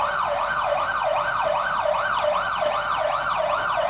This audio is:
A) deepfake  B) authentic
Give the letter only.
B